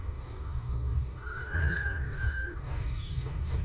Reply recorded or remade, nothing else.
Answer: remade